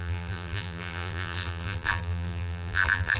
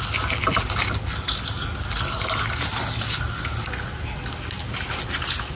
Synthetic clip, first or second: first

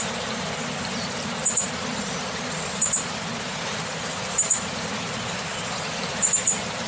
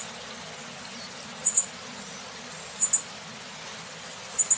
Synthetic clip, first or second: first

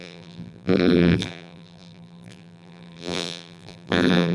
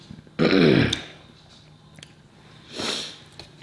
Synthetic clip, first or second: first